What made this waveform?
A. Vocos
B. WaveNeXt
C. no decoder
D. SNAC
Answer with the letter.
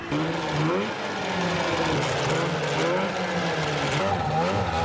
C